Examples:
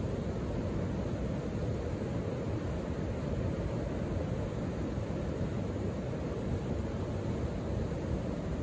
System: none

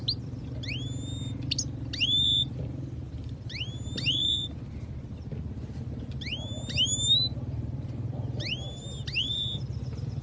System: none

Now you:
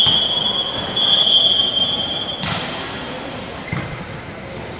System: vocoder, BigVGAN v2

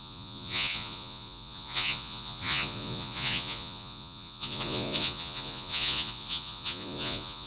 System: vocoder, Vocos